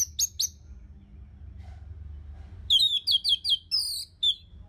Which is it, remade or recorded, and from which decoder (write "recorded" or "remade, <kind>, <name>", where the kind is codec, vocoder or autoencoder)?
recorded